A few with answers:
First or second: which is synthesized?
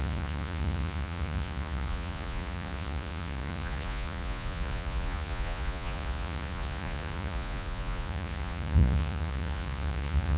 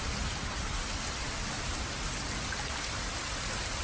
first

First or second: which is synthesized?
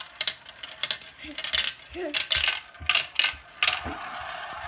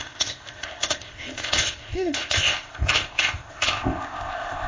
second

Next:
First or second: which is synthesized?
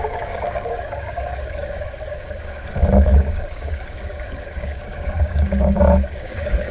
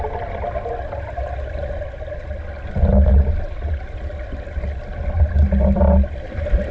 first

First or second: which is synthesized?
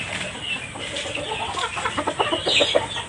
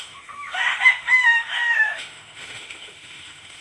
second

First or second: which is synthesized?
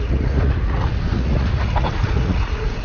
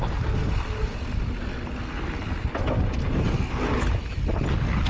first